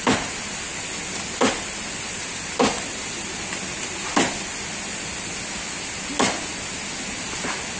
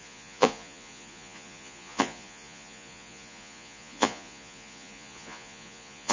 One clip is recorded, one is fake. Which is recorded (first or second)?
first